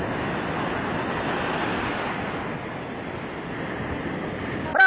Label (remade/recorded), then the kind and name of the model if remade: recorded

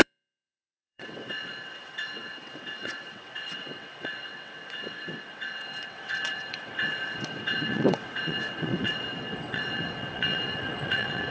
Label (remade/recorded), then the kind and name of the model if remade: remade, vocoder, WaveNeXt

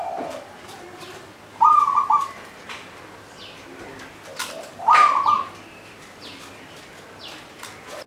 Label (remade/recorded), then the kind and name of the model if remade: recorded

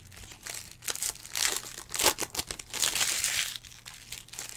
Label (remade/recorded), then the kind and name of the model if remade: recorded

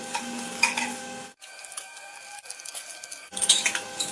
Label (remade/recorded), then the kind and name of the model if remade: remade, codec, DAC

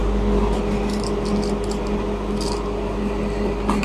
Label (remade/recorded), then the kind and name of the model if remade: recorded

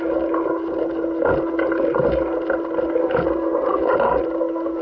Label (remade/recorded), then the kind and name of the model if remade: recorded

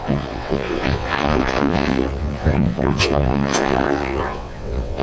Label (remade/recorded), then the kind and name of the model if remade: remade, vocoder, WaveNeXt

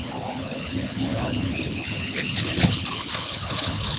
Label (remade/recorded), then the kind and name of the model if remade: remade, codec, HILCodec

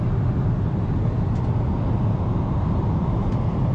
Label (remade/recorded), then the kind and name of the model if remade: recorded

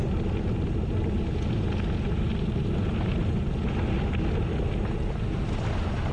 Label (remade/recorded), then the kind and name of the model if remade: recorded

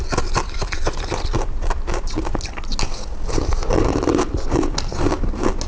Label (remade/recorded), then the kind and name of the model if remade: recorded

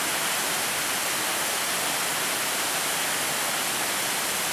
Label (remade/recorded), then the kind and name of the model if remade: recorded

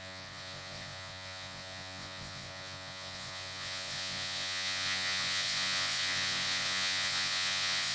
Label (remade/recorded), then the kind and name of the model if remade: remade, vocoder, Vocos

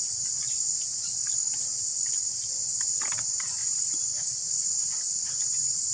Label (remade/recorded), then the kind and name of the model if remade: recorded